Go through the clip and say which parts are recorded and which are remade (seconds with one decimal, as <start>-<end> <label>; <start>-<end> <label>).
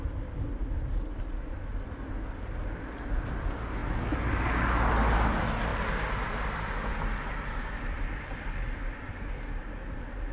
0.0-1.1 recorded; 1.1-2.1 remade; 2.1-5.7 recorded; 5.7-9.7 remade; 9.7-10.3 recorded